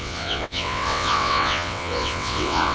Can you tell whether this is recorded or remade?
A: remade